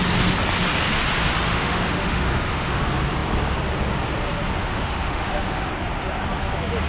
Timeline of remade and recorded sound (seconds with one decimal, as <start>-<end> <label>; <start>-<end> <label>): 0.0-1.5 recorded; 1.5-2.8 remade; 2.8-4.6 recorded; 4.6-5.7 remade; 5.7-6.9 recorded